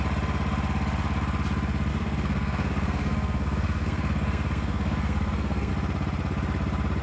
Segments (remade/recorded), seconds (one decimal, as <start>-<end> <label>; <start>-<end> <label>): 0.0-1.9 recorded; 1.9-5.7 remade; 5.7-7.0 recorded